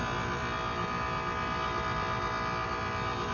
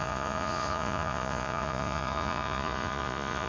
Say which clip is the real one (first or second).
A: first